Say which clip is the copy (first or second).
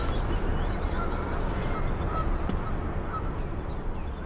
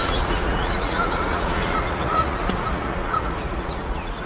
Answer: second